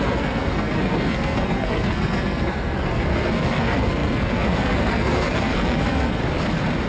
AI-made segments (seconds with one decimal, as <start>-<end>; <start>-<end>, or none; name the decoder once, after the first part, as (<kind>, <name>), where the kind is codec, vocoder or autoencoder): 0.0-6.2 (codec, SNAC)